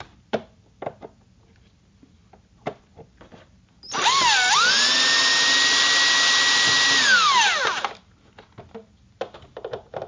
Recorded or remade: recorded